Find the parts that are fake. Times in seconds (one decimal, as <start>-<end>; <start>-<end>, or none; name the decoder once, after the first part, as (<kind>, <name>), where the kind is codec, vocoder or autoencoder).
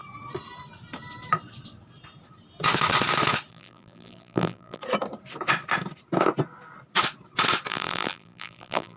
3.5-4.8 (vocoder, BigVGAN v2); 7.7-9.0